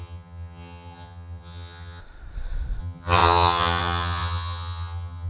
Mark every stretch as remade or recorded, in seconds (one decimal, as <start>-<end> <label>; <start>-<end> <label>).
0.0-2.0 remade; 2.0-2.8 recorded; 2.8-5.3 remade